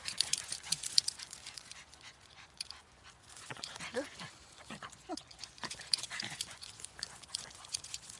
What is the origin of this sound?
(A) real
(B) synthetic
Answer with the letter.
B